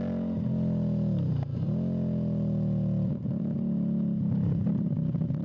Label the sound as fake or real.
real